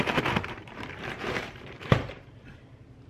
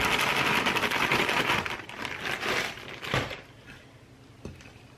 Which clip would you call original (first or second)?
second